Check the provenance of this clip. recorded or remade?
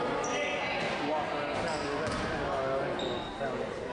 recorded